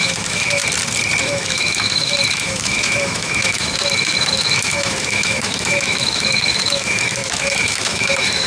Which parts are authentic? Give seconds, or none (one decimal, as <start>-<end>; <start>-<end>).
0.6-1.2

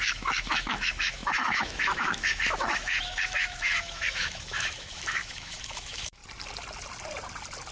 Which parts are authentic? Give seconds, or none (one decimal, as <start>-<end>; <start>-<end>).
6.2-7.7